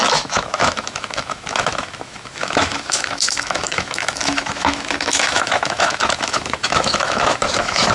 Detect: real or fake fake